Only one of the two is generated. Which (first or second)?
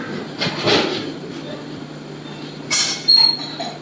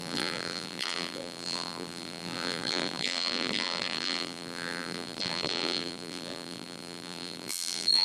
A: second